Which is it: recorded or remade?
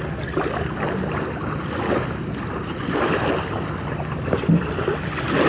recorded